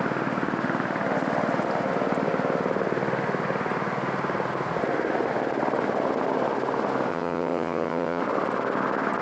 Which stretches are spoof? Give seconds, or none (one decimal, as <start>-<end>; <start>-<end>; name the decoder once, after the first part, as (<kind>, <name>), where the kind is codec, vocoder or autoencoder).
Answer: 7.1-8.2 (vocoder, HiFi-GAN)